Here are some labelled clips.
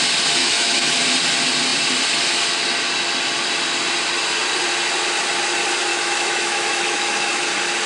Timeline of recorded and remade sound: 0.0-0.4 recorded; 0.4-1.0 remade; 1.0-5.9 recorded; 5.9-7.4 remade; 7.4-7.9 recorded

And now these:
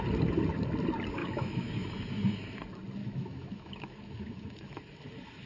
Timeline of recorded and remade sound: 0.0-1.2 recorded; 1.2-1.9 remade; 1.9-3.0 recorded; 3.0-4.8 remade; 4.8-5.5 recorded

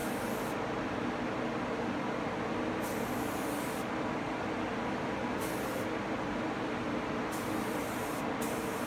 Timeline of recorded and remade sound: 0.0-8.9 recorded

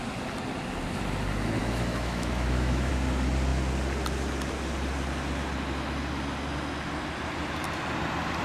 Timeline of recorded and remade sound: 0.0-1.6 recorded; 1.6-2.9 remade; 2.9-8.4 recorded

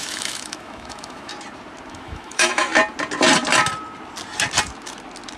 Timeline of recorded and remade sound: 0.0-1.3 remade; 1.3-1.9 recorded; 1.9-2.7 remade; 2.7-5.4 recorded

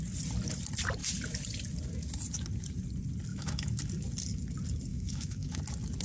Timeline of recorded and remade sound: 0.0-3.3 recorded; 3.3-3.8 remade; 3.8-4.9 recorded; 4.9-5.6 remade; 5.6-6.0 recorded

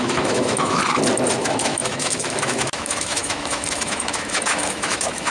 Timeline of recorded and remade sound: 0.0-0.8 remade; 0.8-1.4 recorded; 1.4-5.3 remade